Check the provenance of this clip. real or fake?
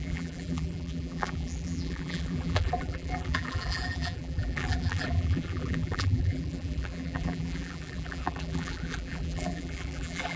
fake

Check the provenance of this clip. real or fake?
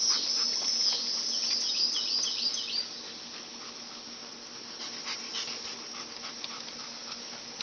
real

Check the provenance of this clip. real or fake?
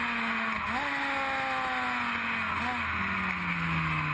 real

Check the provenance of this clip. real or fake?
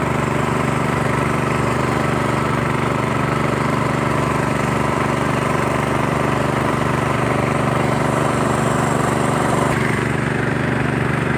fake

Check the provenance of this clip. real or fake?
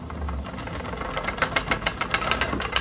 real